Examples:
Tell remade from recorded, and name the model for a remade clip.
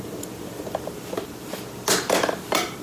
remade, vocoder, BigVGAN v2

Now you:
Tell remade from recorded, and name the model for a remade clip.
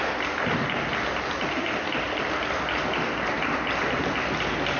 recorded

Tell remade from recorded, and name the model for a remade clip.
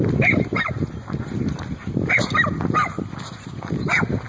recorded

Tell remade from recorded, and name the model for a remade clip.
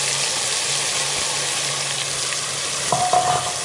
recorded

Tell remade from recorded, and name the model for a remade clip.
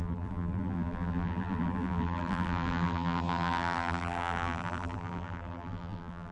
remade, vocoder, BigVGAN v2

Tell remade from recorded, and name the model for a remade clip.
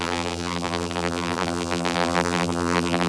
remade, vocoder, BigVGAN v2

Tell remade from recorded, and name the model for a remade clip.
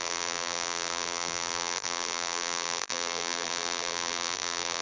remade, vocoder, BigVGAN v2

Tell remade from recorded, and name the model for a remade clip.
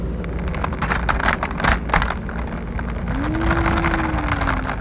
recorded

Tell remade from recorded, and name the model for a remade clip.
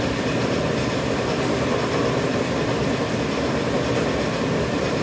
remade, vocoder, BigVGAN v2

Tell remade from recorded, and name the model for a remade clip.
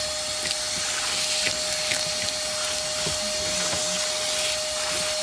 recorded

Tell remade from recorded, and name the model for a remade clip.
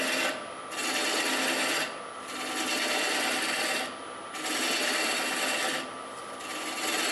recorded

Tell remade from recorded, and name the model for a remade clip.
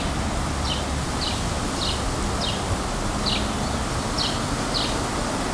recorded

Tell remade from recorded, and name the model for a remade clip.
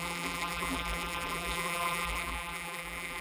remade, vocoder, BigVGAN v2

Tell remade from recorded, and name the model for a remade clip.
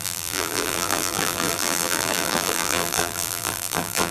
remade, vocoder, BigVGAN v2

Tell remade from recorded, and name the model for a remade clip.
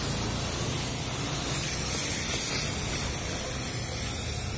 recorded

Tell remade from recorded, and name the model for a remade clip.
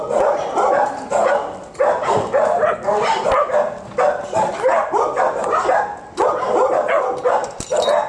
recorded